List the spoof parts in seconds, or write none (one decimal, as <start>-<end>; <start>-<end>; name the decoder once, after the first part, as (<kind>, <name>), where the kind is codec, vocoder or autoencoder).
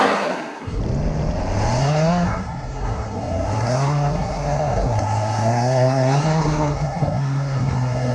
0.0-0.8 (codec, SNAC); 1.8-8.1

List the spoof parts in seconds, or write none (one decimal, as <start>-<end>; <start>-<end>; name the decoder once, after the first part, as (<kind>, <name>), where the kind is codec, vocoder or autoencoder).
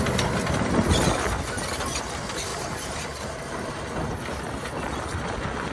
2.5-3.7 (vocoder, BigVGAN v2)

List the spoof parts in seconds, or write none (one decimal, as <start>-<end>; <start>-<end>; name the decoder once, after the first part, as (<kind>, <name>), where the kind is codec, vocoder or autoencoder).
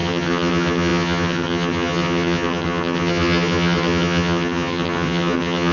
0.0-5.7 (vocoder, HiFi-GAN)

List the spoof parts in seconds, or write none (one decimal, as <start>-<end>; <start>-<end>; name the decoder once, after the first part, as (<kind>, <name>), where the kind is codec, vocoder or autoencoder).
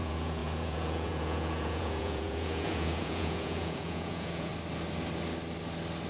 0.0-4.5 (vocoder, Vocos)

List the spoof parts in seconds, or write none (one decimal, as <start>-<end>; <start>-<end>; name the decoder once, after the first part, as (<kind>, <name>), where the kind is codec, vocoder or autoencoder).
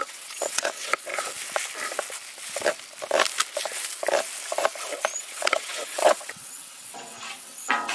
0.0-1.1 (vocoder, WaveNeXt); 5.2-7.9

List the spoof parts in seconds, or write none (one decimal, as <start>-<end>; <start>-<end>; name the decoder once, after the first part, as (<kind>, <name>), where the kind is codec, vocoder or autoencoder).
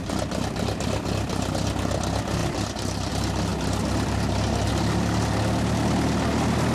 none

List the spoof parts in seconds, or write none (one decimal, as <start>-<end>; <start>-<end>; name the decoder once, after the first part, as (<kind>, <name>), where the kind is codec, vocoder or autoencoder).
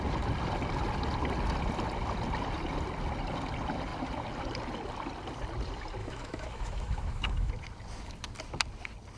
6.0-7.5 (autoencoder, DAC-VAE)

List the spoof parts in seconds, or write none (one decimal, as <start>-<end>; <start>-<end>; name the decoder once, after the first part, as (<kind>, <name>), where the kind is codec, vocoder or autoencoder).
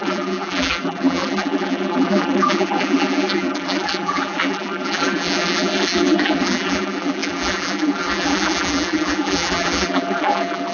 0.0-10.7 (vocoder, BigVGAN v2)